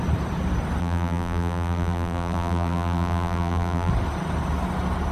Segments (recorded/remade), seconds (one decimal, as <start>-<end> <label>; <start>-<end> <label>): 0.0-0.8 recorded; 0.8-3.9 remade; 3.9-5.1 recorded